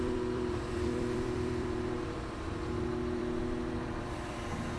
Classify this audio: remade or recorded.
remade